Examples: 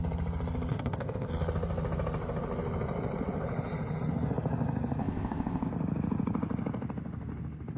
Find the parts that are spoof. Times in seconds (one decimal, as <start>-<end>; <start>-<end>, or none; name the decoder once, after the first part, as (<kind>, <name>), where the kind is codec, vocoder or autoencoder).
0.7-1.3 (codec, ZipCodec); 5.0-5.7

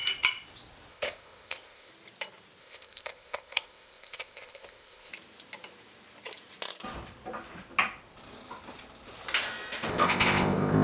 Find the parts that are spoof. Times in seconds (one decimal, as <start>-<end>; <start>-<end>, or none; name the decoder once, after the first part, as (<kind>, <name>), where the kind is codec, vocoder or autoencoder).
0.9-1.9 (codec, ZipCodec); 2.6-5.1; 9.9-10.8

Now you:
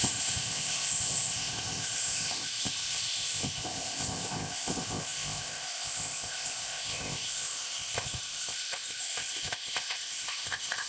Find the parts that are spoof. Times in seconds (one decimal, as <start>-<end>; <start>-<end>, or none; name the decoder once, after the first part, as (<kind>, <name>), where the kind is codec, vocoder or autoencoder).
0.0-10.9 (codec, ZipCodec)

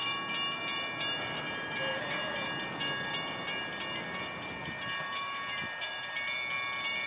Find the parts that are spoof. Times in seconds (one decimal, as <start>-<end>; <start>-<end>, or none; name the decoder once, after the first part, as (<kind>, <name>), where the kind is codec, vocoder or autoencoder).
none